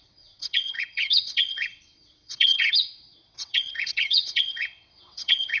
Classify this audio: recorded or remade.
remade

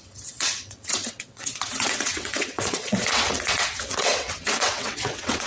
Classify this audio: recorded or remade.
remade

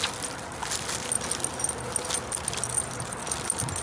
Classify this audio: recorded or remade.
recorded